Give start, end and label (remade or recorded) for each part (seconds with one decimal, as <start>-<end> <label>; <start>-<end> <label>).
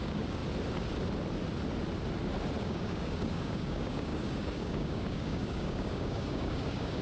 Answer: 0.0-0.4 remade; 0.4-2.6 recorded; 2.6-7.0 remade